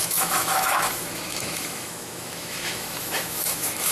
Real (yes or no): no